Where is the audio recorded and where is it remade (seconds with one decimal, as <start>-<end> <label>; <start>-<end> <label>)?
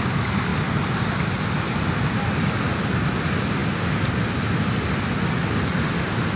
0.0-6.4 recorded